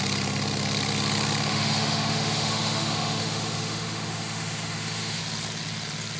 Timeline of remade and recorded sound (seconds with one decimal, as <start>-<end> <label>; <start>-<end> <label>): 0.0-1.5 recorded; 1.5-5.2 remade; 5.2-6.2 recorded